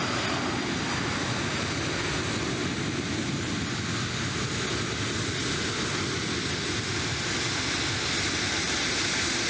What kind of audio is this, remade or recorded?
recorded